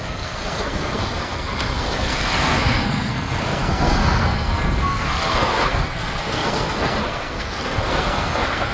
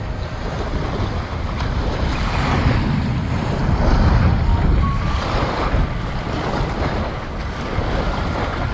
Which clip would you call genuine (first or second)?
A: second